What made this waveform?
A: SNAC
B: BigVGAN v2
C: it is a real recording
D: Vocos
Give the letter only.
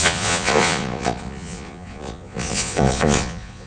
D